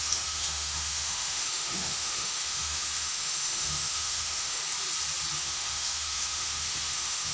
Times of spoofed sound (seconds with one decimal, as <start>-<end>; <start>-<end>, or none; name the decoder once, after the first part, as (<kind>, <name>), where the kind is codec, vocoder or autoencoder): 0.0-4.6 (autoencoder, DAC-VAE); 5.4-7.3